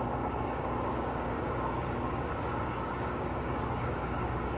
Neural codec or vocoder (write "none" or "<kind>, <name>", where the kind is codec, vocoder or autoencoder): codec, DAC